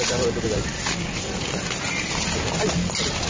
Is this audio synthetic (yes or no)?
no